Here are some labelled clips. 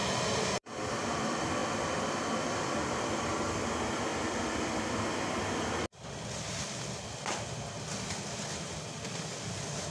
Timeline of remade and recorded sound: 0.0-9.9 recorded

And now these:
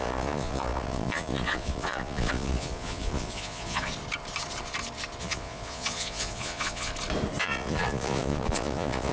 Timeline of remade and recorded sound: 0.0-3.9 remade; 3.9-5.2 recorded; 5.2-6.9 remade; 6.9-7.4 recorded; 7.4-9.1 remade

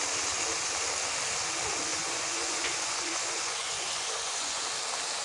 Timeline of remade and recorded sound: 0.0-1.9 recorded; 1.9-4.6 remade; 4.6-5.2 recorded

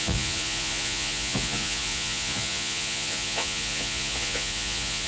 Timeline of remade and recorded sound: 0.0-5.1 remade

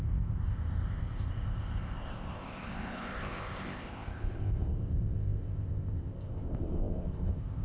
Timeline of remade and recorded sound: 0.0-7.6 remade

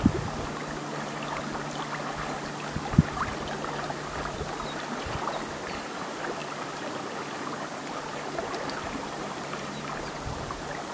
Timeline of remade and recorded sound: 0.0-10.9 recorded